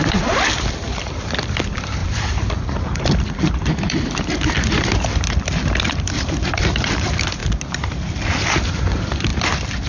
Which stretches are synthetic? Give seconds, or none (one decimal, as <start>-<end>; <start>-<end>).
0.0-7.4; 8.4-9.3